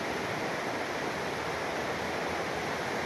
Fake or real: real